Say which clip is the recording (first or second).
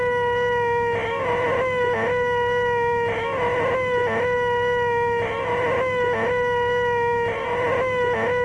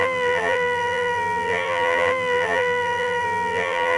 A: first